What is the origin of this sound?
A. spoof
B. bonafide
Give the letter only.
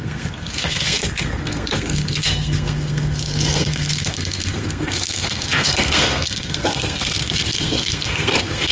A